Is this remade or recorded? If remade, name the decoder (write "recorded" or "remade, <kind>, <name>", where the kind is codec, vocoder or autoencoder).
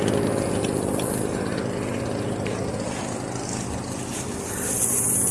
recorded